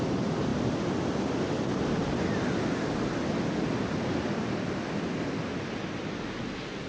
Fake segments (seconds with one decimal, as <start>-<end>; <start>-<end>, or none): none